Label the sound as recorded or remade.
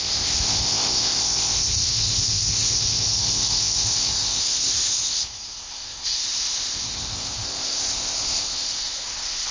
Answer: remade